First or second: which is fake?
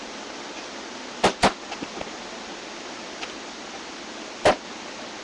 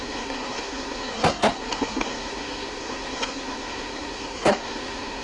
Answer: second